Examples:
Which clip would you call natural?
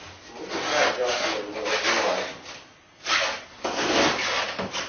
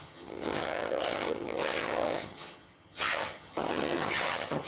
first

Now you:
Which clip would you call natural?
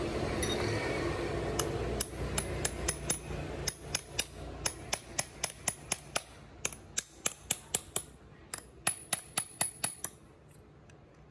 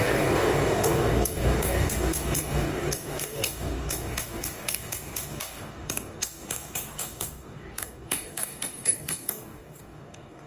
first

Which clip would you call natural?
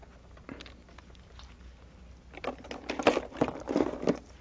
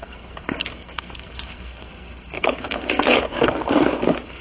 first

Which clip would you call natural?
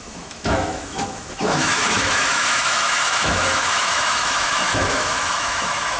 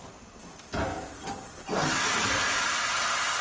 second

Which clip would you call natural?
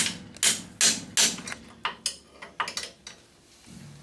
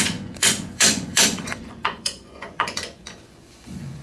first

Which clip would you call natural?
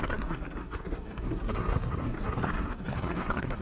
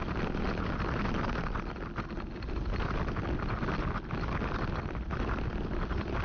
second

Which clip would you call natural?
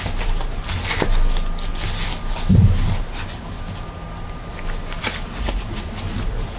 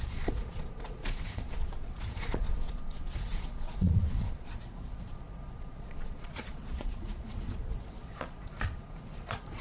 first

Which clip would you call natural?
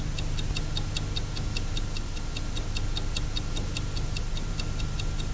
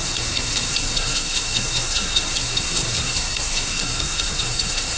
first